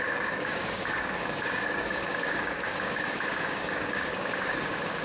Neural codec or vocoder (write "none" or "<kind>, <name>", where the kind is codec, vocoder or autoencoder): codec, DAC